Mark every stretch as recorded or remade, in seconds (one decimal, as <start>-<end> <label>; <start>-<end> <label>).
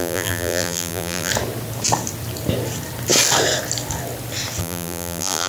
0.0-1.3 remade; 1.3-4.6 recorded; 4.6-5.5 remade